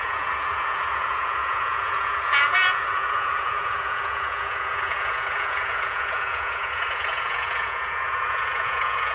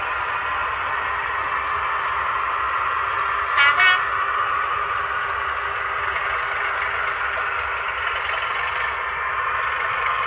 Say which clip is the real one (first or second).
second